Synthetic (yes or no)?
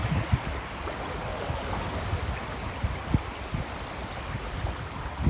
no